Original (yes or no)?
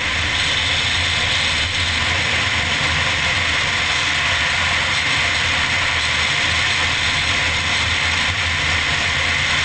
yes